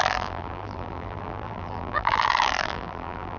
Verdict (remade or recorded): remade